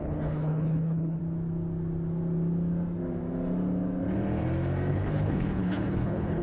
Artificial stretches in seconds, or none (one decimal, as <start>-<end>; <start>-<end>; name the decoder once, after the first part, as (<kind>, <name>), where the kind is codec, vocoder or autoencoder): 0.0-1.2 (codec, HILCodec); 4.9-6.4